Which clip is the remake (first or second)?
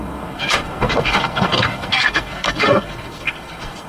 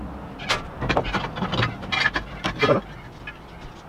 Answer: first